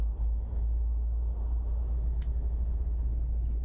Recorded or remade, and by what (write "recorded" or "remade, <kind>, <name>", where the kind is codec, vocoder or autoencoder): recorded